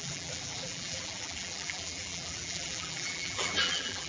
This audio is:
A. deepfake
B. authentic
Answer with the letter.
A